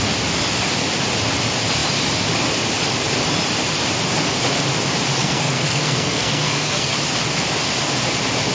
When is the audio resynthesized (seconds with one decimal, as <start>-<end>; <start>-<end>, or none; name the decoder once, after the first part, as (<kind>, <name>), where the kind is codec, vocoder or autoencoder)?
5.2-6.9 (codec, SNAC)